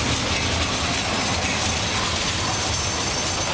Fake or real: real